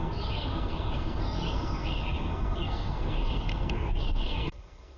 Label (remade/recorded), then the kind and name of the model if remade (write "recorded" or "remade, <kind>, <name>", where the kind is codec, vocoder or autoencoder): remade, codec, SNAC